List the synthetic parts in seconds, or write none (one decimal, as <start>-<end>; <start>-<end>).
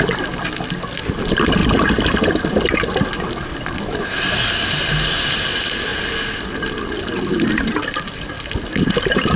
none